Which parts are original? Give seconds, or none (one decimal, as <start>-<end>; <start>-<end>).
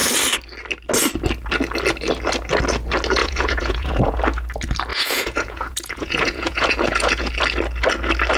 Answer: 0.0-3.2; 4.2-4.9; 7.3-8.4